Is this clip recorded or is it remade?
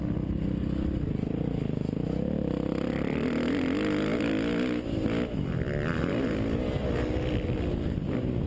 recorded